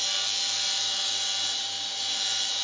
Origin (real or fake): fake